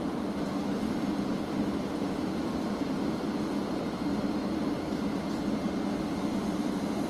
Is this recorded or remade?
recorded